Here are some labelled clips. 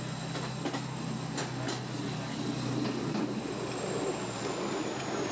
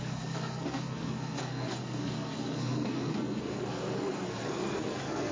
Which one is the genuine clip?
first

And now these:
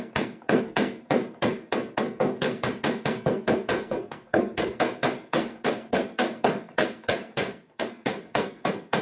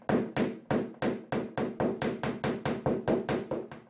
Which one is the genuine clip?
second